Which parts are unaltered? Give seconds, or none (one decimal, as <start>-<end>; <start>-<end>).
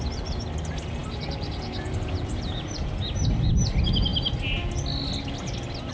0.0-1.0; 3.2-5.9